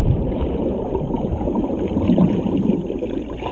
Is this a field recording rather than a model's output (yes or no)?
no